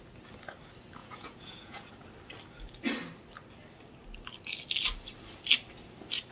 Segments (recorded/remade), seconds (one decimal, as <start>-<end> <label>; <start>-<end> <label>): 0.0-1.0 recorded; 1.0-1.9 remade; 1.9-6.3 recorded